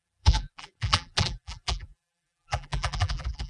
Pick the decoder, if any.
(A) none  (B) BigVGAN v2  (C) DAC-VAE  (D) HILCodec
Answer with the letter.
B